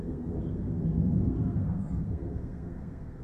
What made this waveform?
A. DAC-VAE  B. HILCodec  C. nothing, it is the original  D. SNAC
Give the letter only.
D